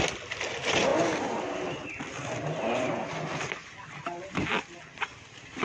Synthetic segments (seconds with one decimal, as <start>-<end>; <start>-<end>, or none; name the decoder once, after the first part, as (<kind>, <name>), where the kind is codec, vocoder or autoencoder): none